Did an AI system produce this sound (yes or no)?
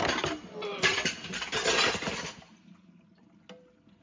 no